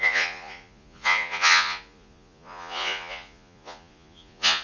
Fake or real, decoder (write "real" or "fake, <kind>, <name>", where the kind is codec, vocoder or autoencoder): fake, vocoder, Vocos